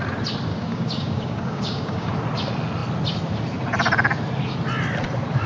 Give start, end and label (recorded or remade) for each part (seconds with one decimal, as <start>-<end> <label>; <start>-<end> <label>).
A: 0.0-0.5 recorded; 0.5-2.1 remade; 2.1-5.5 recorded